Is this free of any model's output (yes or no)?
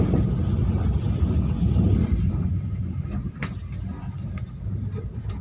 yes